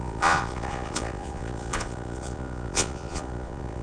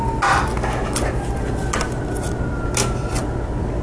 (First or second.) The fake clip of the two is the first